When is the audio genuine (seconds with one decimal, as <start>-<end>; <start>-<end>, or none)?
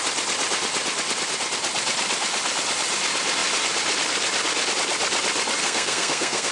0.0-5.6